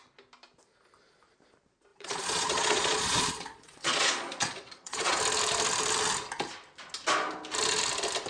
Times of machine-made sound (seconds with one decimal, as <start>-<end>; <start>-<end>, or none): 1.9-5.2